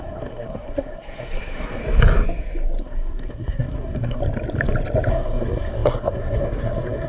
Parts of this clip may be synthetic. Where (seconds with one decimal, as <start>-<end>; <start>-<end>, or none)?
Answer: 0.0-1.8; 2.8-4.2; 5.1-7.1